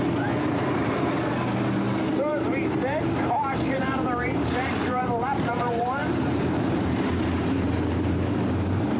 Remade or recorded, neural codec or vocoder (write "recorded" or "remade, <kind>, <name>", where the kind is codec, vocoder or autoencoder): remade, vocoder, BigVGAN v2